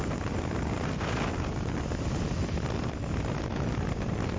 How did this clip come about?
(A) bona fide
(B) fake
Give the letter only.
A